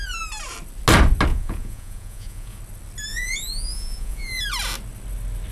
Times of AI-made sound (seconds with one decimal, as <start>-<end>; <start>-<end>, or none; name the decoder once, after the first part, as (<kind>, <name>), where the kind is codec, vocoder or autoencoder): 1.3-2.6 (vocoder, Vocos); 3.1-4.4